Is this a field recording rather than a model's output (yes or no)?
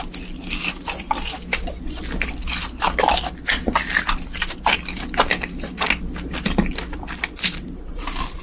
yes